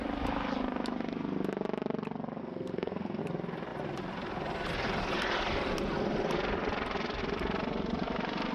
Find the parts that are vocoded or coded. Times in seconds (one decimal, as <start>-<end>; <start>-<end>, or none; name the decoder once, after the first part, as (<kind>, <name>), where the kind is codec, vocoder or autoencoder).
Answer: 2.4-3.2 (codec, SNAC)